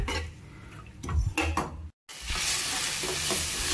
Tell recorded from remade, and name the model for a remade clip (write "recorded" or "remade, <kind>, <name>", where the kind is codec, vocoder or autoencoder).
recorded